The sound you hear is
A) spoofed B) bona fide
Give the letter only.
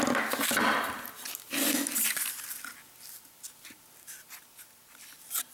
B